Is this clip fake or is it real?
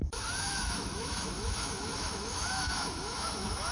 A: fake